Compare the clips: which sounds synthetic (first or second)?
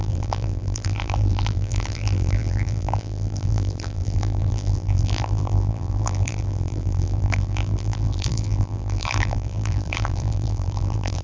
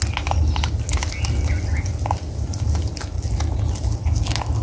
first